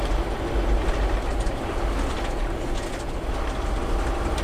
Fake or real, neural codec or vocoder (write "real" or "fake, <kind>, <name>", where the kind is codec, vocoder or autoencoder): real